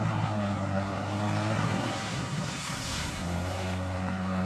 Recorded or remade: remade